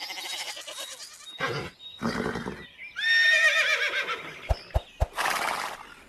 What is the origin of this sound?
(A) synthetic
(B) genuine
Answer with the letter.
B